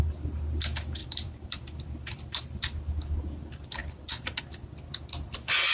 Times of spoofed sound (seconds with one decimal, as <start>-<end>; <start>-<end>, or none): 1.0-2.6; 3.8-4.4